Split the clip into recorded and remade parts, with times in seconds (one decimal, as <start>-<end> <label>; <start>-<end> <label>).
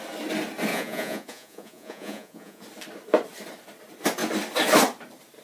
0.0-0.7 recorded; 0.7-2.6 remade; 2.6-5.4 recorded